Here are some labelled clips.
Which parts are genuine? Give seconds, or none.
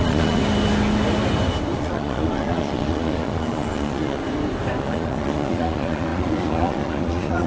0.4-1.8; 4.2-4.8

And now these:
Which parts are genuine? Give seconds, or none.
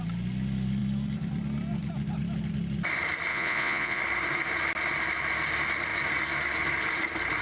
0.0-3.3; 4.0-7.4